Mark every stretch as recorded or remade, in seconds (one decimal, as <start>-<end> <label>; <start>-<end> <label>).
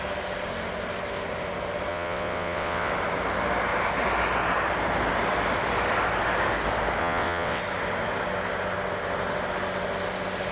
0.0-1.9 recorded; 1.9-2.9 remade; 2.9-7.0 recorded; 7.0-7.6 remade; 7.6-10.5 recorded